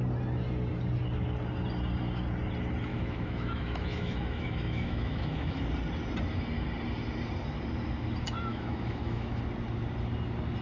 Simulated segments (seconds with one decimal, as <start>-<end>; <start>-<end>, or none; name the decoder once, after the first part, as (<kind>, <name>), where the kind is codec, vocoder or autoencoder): 2.9-5.6 (autoencoder, DAC-VAE); 8.5-9.4